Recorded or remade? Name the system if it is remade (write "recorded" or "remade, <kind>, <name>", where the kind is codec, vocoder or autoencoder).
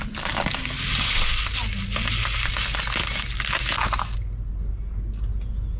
recorded